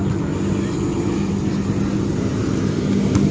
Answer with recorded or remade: recorded